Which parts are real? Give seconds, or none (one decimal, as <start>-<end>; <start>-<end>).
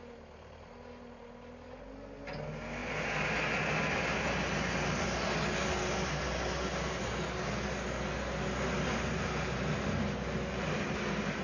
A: 0.0-11.4